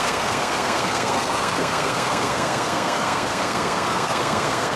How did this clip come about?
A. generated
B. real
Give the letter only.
A